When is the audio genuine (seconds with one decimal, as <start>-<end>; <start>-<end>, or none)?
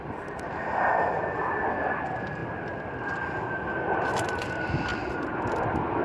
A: 0.0-6.0